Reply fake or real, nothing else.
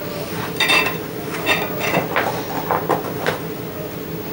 real